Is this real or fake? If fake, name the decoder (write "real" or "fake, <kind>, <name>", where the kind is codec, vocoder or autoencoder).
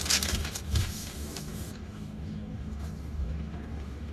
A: fake, codec, DAC